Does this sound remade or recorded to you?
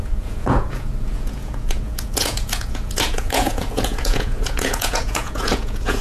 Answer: remade